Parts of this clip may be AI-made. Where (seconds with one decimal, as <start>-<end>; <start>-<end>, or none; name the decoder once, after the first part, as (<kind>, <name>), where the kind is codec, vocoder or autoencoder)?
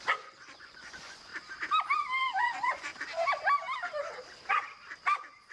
0.0-1.3 (vocoder, Vocos); 2.4-2.9